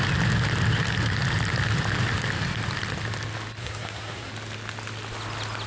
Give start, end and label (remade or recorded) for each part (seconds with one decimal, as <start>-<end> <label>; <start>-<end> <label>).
0.0-3.6 recorded; 3.6-4.3 remade; 4.3-5.7 recorded